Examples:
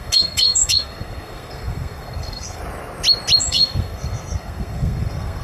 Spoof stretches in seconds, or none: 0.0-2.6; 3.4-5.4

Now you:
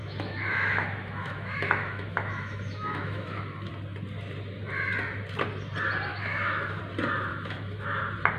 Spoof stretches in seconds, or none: 0.0-3.7; 6.1-6.8; 7.3-8.0

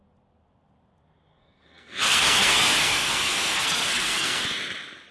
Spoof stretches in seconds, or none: 1.3-4.4

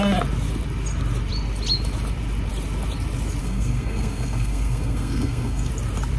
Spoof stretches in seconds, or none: 3.4-5.7

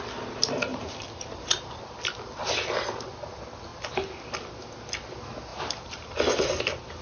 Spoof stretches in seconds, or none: 0.7-1.8; 5.5-7.0

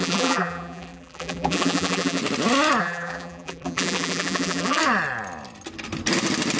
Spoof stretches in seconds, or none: 0.0-2.2; 2.8-4.8

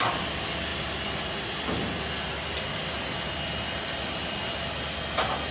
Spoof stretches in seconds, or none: none